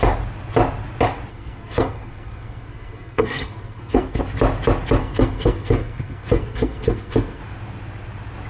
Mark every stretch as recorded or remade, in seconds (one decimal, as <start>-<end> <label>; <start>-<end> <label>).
0.0-1.3 recorded; 1.3-4.2 remade; 4.2-5.0 recorded; 5.0-7.4 remade; 7.4-8.5 recorded